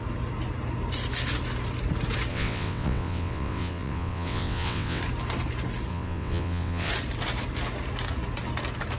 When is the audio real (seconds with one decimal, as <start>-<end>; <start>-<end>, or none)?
0.0-2.3; 5.0-5.9; 6.9-9.0